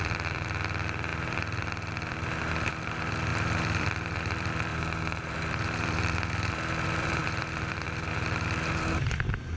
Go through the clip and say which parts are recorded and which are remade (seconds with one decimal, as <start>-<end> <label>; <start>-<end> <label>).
0.0-4.7 remade; 4.7-5.3 recorded; 5.3-9.6 remade